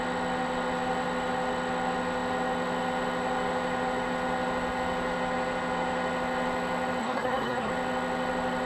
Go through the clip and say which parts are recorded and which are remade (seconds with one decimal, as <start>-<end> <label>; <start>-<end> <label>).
0.0-7.0 recorded; 7.0-7.7 remade; 7.7-8.7 recorded

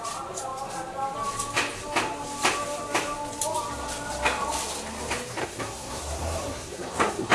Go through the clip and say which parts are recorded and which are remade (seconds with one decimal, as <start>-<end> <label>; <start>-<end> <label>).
0.0-5.4 recorded; 5.4-7.3 remade

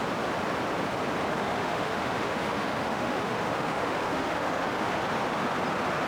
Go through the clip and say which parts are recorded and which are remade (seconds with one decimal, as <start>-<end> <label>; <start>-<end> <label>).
0.0-1.3 recorded; 1.3-5.0 remade; 5.0-6.1 recorded

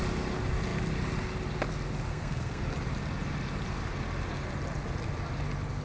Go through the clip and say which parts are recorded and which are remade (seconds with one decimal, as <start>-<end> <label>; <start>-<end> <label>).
0.0-2.1 recorded; 2.1-2.6 remade; 2.6-5.8 recorded